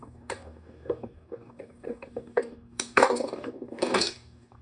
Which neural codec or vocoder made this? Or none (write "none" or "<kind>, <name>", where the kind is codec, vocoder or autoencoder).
codec, DAC